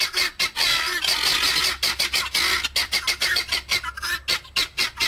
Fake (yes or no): no